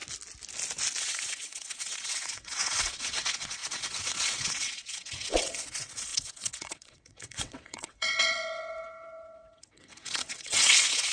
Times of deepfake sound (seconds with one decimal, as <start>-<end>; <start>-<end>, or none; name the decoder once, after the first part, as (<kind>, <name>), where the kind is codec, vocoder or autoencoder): 1.0-11.1 (vocoder, WaveNeXt)